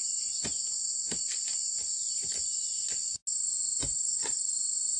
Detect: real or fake real